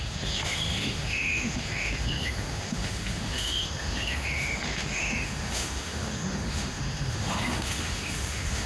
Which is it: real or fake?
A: fake